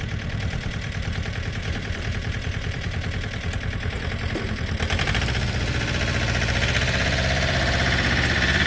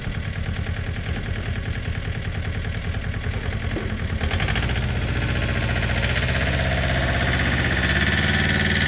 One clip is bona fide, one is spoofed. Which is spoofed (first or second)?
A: first